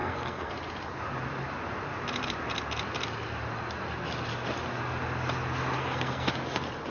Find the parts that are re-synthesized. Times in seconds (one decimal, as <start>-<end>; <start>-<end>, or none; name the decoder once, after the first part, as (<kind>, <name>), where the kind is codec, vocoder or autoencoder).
0.0-0.5 (codec, SNAC); 5.8-6.3